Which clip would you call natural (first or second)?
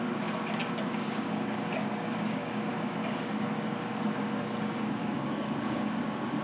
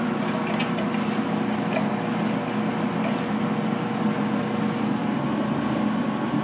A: second